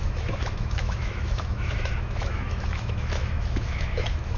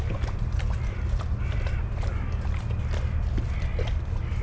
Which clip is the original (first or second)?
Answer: second